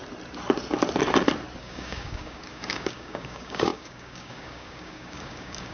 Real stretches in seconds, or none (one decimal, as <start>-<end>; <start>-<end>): 0.0-1.6